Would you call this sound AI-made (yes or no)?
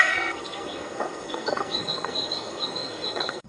yes